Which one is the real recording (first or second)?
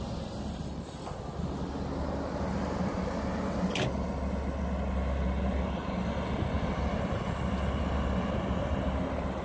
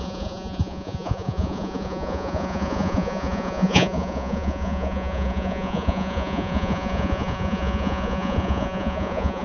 first